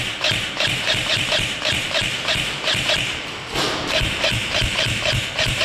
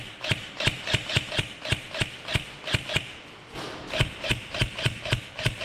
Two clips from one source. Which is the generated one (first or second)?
first